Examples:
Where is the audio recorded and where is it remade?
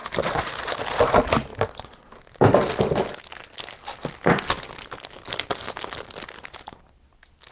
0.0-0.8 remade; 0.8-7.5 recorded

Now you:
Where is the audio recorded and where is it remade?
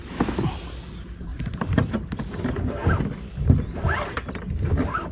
0.0-5.1 recorded